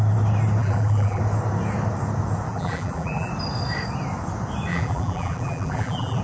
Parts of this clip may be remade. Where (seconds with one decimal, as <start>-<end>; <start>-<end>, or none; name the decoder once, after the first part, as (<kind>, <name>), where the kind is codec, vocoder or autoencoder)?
0.6-1.2 (vocoder, BigVGAN v2); 2.5-3.3; 4.7-6.2